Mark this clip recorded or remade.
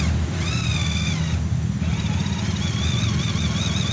recorded